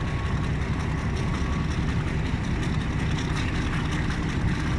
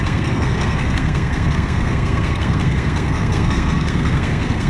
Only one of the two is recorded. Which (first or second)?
first